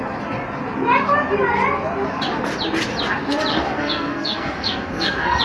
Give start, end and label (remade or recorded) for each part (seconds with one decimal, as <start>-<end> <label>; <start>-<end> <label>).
0.0-3.5 recorded; 3.5-5.4 remade